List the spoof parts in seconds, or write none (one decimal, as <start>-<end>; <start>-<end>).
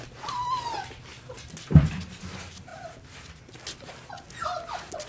none